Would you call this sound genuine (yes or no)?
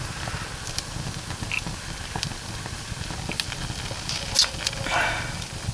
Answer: yes